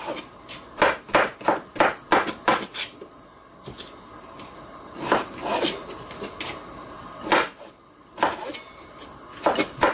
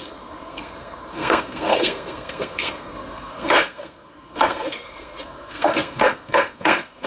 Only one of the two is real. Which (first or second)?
first